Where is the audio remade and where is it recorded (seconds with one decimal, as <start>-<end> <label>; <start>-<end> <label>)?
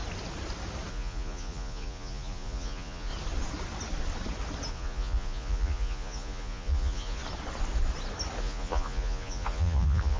0.0-0.9 recorded; 0.9-3.1 remade; 3.1-4.7 recorded; 4.7-7.2 remade; 7.2-8.4 recorded; 8.4-10.2 remade